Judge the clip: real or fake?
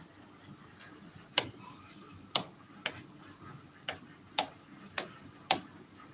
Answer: real